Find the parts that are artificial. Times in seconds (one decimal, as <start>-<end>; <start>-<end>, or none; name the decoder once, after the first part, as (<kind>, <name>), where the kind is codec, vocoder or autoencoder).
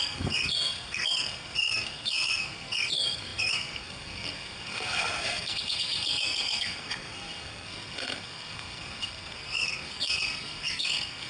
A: 0.0-11.3 (codec, SNAC)